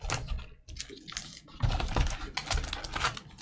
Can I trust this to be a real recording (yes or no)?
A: yes